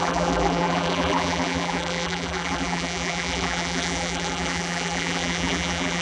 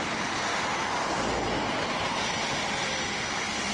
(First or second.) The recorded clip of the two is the second